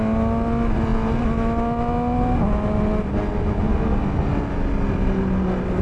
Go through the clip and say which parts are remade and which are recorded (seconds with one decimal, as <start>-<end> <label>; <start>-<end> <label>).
0.0-5.8 recorded